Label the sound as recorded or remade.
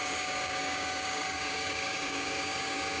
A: remade